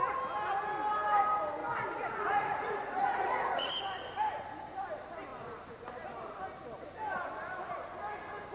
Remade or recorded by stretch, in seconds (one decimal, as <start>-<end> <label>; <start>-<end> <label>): 0.0-1.6 recorded; 1.6-3.7 remade; 3.7-8.5 recorded